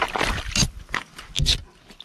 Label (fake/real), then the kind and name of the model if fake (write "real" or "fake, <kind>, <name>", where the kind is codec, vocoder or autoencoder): real